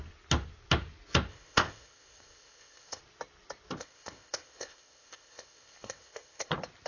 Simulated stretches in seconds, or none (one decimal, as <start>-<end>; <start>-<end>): 1.3-3.0; 3.8-6.5